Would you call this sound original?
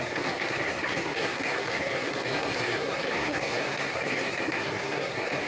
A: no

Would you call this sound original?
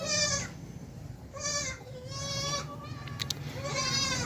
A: yes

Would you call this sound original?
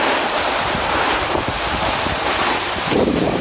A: no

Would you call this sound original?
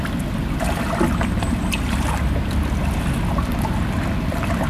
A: yes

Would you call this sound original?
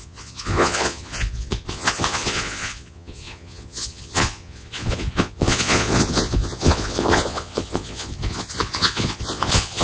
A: no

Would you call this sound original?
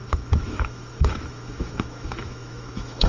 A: no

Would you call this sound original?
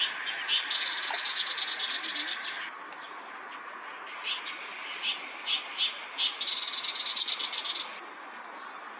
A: yes